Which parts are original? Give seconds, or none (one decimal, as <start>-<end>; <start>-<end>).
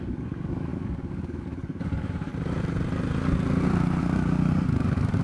2.3-4.0